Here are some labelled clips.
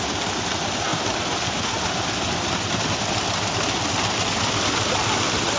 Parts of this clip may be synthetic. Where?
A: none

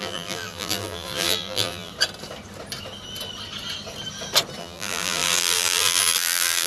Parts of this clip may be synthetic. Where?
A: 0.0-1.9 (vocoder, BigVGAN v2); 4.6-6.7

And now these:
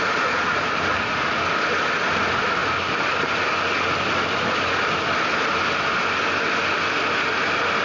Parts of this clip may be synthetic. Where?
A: none

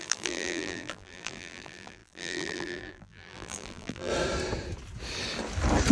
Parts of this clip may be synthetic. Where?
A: 0.0-4.1 (vocoder, BigVGAN v2)

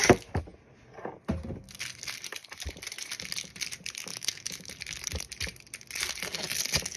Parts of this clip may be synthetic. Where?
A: 4.1-4.7 (autoencoder, DAC-VAE)

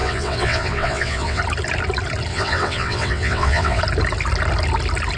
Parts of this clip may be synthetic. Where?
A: 0.0-1.4 (vocoder, WaveNeXt); 2.3-3.8

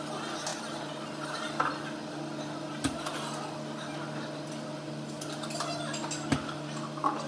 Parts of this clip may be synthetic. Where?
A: none